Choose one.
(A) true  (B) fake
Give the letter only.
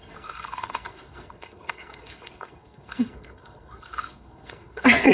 B